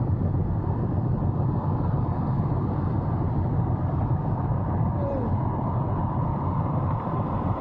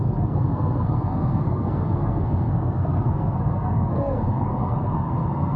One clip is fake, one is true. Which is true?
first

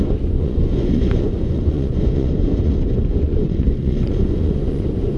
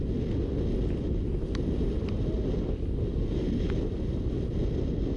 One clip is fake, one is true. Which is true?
second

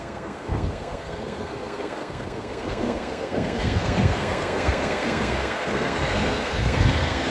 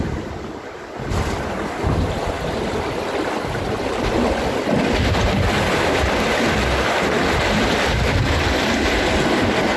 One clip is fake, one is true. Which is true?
second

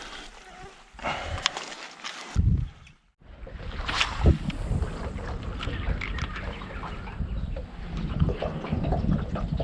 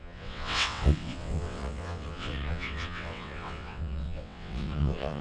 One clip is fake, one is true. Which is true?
first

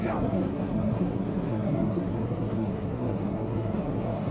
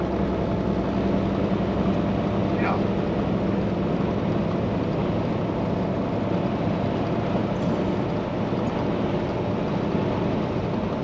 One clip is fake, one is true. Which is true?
second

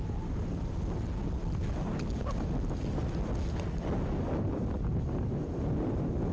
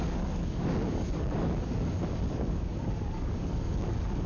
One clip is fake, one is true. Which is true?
first